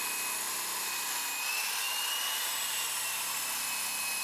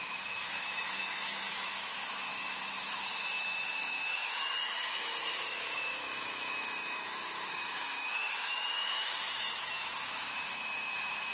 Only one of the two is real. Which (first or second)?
first